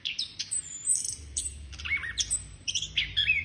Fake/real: fake